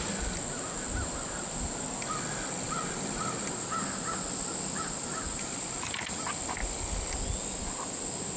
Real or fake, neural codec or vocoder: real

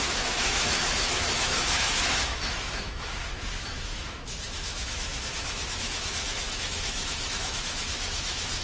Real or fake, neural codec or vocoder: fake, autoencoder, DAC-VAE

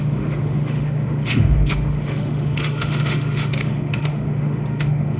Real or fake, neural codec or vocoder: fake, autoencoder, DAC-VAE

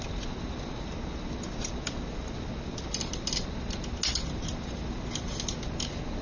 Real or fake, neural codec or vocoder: real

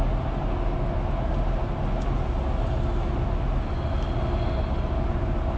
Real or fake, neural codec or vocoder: real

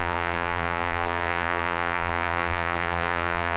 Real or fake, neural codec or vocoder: fake, vocoder, BigVGAN v2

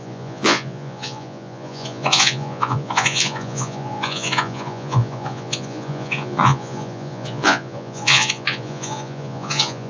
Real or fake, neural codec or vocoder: fake, vocoder, Vocos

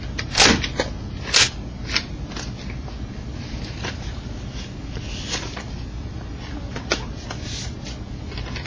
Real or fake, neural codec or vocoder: real